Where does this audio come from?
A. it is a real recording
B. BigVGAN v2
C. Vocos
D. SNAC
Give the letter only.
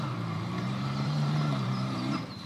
B